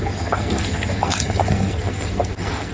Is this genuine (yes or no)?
no